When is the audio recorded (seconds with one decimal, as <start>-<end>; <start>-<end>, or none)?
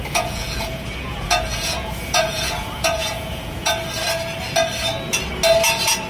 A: 3.7-6.1